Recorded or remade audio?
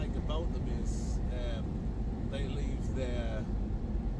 recorded